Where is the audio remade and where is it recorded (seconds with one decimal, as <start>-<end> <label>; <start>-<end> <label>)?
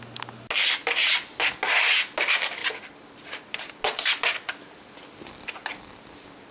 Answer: 0.0-6.5 recorded